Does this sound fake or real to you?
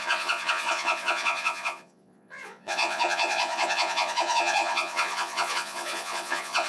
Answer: fake